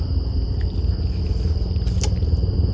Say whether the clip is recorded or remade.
recorded